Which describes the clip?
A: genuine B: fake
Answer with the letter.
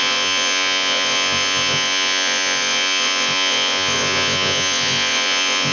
B